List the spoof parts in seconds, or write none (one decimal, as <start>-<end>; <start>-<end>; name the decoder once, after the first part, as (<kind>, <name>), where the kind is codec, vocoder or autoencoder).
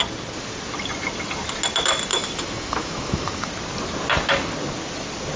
2.1-3.5 (autoencoder, DAC-VAE)